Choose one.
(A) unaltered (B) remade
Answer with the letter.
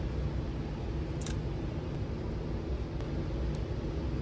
A